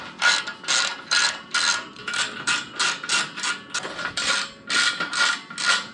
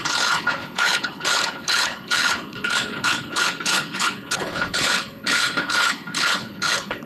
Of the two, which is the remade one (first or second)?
second